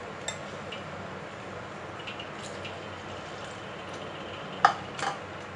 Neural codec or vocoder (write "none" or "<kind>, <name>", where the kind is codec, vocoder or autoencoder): none